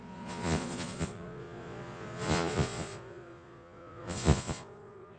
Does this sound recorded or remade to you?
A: remade